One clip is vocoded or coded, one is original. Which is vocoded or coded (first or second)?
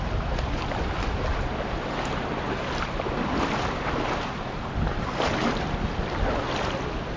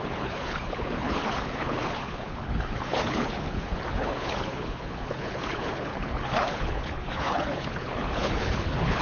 second